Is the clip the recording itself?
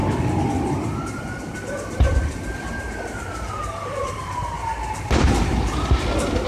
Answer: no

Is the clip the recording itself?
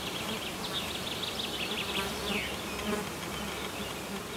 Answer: yes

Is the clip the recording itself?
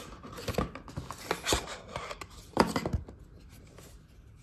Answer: yes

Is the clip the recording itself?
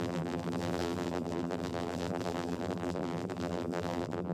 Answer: no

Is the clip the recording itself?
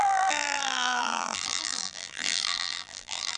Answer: no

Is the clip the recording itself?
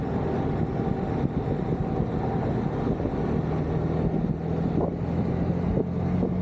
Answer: yes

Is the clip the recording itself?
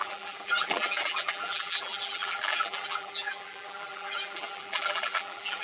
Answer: no